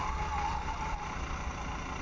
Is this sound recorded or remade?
recorded